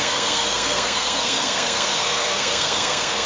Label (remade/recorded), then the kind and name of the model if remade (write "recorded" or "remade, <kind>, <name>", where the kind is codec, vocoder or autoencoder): remade, codec, SNAC